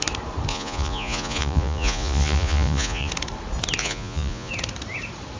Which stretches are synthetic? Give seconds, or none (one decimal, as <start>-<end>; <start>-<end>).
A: 0.5-3.1; 3.8-4.5